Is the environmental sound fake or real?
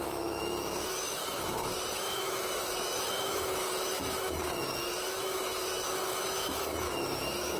fake